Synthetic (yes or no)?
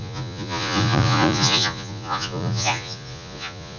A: yes